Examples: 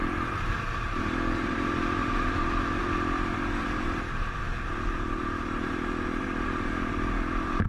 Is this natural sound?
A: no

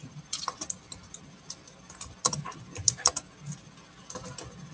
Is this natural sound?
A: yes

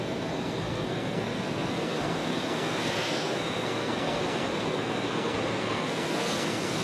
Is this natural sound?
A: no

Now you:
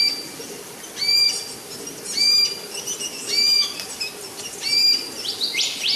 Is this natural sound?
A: yes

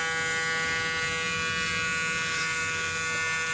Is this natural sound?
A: yes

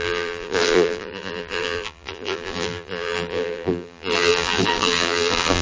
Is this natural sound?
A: no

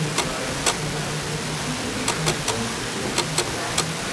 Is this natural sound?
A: yes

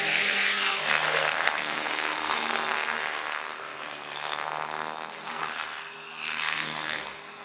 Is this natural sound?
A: no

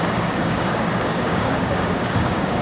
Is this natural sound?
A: no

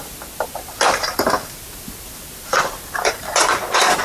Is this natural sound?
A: yes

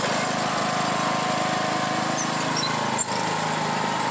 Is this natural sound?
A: yes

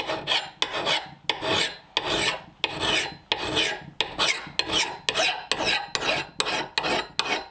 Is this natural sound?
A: yes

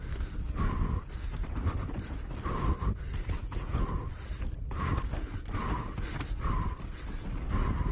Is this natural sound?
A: yes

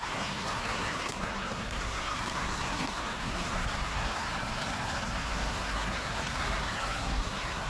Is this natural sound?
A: no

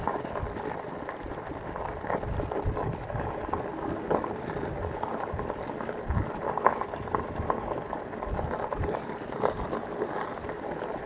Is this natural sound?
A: yes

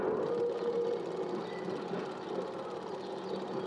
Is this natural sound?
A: yes